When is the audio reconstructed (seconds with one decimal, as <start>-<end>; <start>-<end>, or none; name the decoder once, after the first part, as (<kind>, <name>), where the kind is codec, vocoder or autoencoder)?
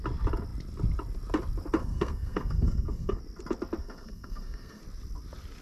1.8-3.2 (codec, SNAC); 3.8-4.8